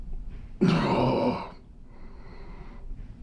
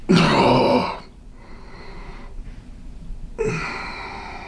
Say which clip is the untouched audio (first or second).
second